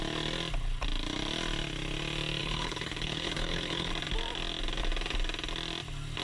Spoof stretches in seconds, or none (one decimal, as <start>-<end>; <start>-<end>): 2.4-3.9